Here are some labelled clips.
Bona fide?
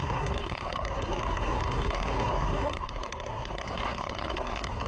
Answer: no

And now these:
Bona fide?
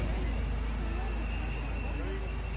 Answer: yes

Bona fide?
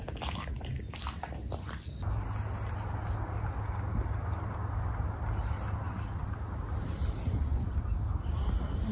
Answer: yes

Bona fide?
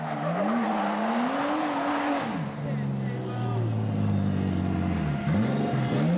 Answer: yes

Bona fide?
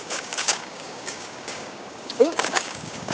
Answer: no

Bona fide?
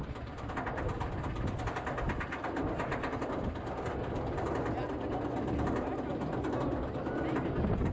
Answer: yes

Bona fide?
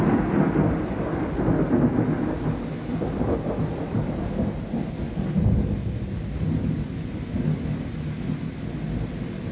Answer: yes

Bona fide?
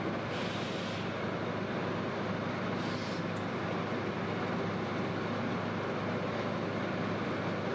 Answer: yes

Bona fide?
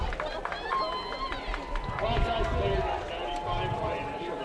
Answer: yes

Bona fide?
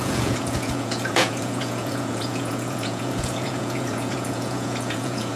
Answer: no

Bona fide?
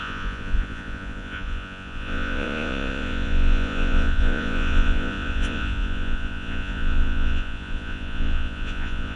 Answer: no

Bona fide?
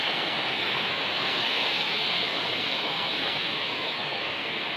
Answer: no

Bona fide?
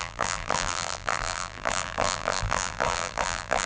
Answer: no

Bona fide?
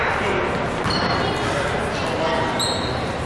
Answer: yes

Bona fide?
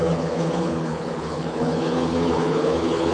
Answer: no